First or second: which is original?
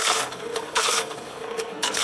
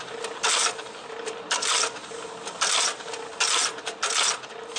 second